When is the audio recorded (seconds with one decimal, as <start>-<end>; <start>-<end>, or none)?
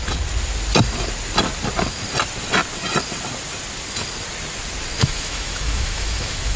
0.0-5.0